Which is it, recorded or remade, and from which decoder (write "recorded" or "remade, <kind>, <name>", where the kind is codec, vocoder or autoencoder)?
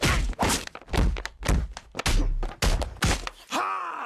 recorded